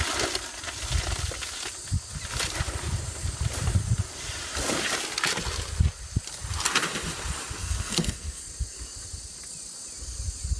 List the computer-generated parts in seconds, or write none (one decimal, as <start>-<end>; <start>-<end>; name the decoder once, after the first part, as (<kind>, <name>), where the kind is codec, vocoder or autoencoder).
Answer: 7.6-8.4 (codec, SNAC)